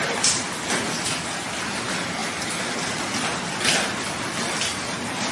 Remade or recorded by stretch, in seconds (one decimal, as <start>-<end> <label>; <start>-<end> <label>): 0.0-5.3 recorded